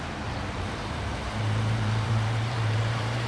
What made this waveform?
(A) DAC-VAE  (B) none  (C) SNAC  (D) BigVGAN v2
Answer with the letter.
D